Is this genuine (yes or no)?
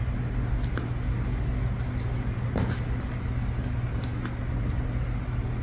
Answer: yes